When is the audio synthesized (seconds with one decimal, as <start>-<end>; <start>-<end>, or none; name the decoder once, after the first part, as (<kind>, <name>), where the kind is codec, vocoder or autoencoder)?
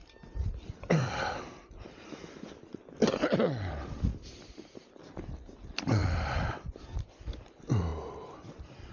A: 0.9-4.1 (vocoder, BigVGAN v2); 4.9-6.0; 6.5-7.9; 8.5-8.9